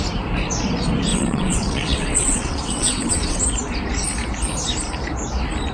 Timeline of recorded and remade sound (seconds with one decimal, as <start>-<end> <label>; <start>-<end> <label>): 0.0-1.1 recorded; 1.1-3.4 remade; 3.4-5.7 recorded

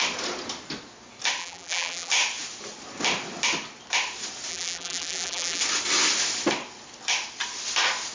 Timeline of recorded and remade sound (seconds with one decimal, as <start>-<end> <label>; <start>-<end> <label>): 0.0-1.4 recorded; 1.4-2.1 remade; 2.1-4.5 recorded; 4.5-5.6 remade; 5.6-8.1 recorded

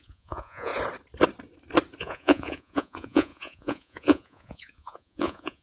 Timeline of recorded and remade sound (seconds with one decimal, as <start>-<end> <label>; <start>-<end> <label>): 0.0-0.7 remade; 0.7-2.0 recorded; 2.0-5.6 remade

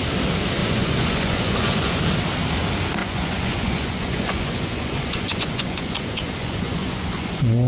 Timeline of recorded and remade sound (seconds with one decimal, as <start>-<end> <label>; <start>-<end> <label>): 0.0-0.6 recorded; 0.6-2.0 remade; 2.0-3.0 recorded; 3.0-7.7 remade

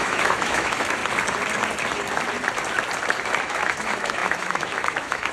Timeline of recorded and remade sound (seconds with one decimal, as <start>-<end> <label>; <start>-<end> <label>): 0.0-1.0 remade; 1.0-3.4 recorded; 3.4-5.3 remade

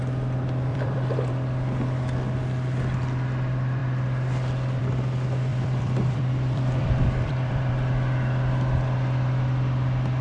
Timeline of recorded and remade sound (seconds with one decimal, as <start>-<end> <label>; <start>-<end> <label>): 0.0-0.7 recorded; 0.7-1.3 remade; 1.3-5.5 recorded; 5.5-7.7 remade; 7.7-10.2 recorded

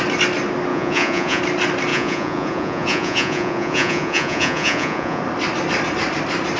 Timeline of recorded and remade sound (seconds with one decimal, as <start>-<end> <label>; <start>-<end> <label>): 0.0-0.7 recorded; 0.7-1.4 remade; 1.4-1.9 recorded; 1.9-5.2 remade; 5.2-6.6 recorded